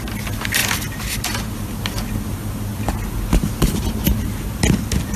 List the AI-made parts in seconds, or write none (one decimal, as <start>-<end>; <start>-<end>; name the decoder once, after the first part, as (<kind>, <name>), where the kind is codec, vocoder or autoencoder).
none

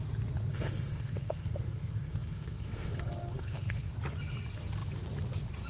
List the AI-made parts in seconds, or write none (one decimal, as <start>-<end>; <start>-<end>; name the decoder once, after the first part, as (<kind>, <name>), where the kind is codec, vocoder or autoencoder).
0.5-3.9 (codec, SNAC)